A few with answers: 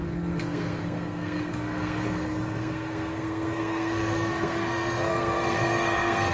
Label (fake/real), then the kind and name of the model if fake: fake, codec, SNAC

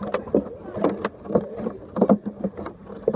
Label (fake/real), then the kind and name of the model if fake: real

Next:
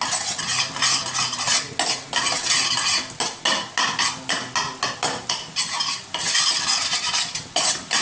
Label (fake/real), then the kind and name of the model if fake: real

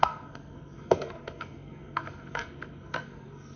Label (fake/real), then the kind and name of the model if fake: fake, codec, SNAC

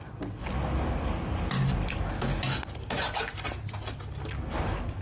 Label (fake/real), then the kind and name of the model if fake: real